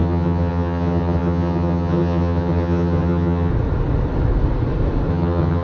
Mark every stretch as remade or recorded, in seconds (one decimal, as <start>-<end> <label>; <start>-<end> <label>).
0.0-3.5 remade; 3.5-5.1 recorded; 5.1-5.6 remade